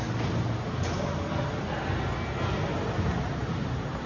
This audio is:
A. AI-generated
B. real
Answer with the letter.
B